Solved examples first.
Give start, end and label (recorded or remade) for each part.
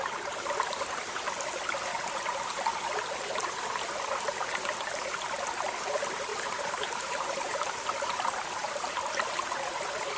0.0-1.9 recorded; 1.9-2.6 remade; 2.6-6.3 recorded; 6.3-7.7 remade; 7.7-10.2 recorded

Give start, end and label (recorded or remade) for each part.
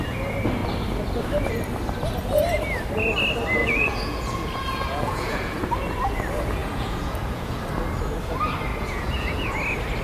0.0-3.6 recorded; 3.6-5.7 remade; 5.7-6.6 recorded; 6.6-7.6 remade; 7.6-8.7 recorded; 8.7-9.5 remade; 9.5-10.0 recorded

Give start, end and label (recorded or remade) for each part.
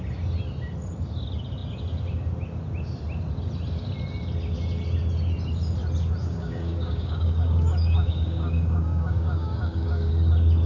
0.0-6.2 recorded; 6.2-10.1 remade; 10.1-10.7 recorded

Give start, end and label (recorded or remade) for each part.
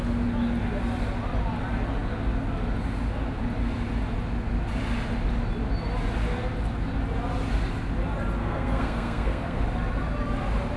0.0-8.4 recorded; 8.4-9.6 remade; 9.6-10.8 recorded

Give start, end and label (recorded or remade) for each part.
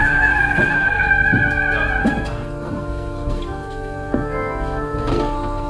0.0-1.1 remade; 1.1-2.0 recorded; 2.0-5.7 remade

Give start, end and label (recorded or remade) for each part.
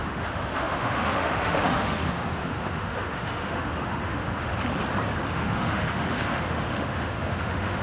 0.0-4.5 remade; 4.5-5.3 recorded; 5.3-7.8 remade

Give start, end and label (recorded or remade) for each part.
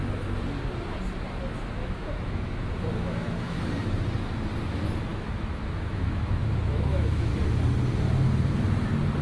0.0-1.8 recorded; 1.8-3.7 remade; 3.7-5.1 recorded; 5.1-7.3 remade; 7.3-9.2 recorded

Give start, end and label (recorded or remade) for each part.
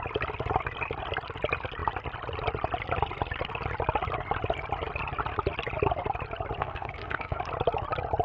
0.0-6.6 recorded; 6.6-7.4 remade; 7.4-8.2 recorded